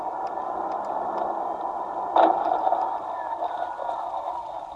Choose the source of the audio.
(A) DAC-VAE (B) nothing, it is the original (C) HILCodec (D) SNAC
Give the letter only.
B